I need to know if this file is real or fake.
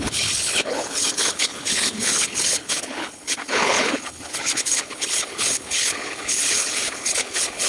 fake